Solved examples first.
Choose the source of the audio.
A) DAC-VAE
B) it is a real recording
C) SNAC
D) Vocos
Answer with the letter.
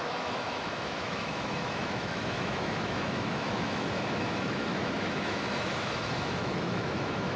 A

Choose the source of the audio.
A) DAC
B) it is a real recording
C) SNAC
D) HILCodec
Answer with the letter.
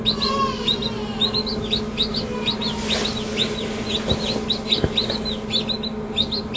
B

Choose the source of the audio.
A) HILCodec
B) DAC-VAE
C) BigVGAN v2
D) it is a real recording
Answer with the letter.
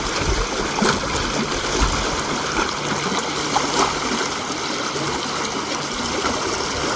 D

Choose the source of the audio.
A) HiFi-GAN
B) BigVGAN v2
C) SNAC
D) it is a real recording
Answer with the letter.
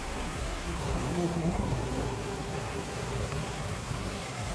C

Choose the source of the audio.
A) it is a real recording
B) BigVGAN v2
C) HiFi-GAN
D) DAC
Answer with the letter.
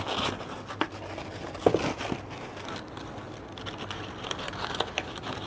A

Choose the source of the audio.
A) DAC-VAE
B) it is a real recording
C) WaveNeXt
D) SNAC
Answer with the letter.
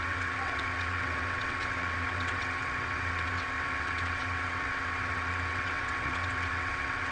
C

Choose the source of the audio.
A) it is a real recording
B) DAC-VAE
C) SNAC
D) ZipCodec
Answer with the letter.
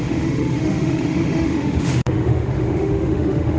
B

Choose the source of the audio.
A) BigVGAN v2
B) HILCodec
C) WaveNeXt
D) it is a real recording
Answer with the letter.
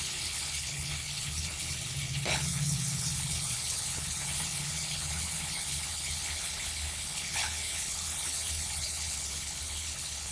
B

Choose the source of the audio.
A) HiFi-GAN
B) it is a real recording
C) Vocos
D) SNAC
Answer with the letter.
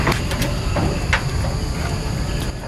B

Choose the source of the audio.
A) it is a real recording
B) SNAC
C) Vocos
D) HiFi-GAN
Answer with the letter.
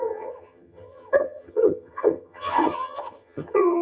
D